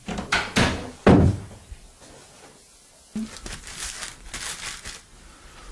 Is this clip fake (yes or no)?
no